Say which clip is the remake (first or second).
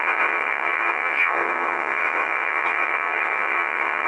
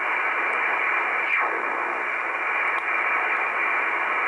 first